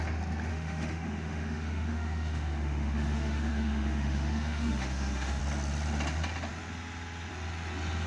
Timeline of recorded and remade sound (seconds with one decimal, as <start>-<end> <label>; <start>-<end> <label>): 0.0-0.5 recorded; 0.5-5.4 remade; 5.4-8.1 recorded

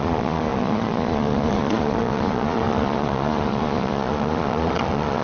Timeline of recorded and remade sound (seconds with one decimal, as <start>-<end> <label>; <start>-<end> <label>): 0.0-5.2 remade

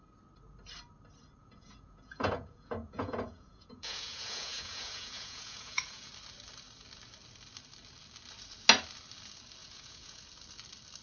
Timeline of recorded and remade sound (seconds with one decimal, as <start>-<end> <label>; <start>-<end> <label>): 0.0-1.4 recorded; 1.4-6.1 remade; 6.1-9.6 recorded; 9.6-10.2 remade; 10.2-11.0 recorded

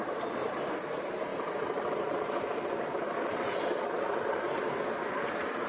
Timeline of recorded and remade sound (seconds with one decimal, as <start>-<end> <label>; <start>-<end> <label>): 0.0-1.3 remade; 1.3-4.3 recorded; 4.3-5.7 remade

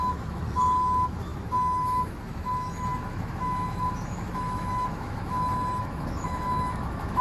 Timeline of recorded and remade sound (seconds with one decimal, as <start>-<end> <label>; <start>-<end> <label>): 0.0-7.2 remade

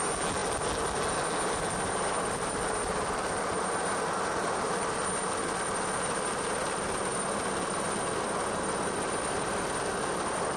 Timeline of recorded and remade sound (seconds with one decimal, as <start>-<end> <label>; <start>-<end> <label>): 0.0-10.6 recorded

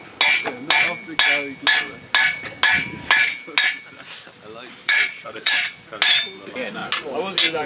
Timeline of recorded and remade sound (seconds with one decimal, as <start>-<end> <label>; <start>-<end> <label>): 0.0-4.8 recorded; 4.8-5.8 remade; 5.8-7.7 recorded

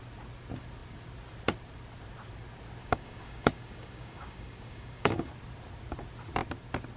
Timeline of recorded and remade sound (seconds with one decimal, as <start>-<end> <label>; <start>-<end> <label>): 0.0-2.8 recorded; 2.8-5.3 remade; 5.3-7.0 recorded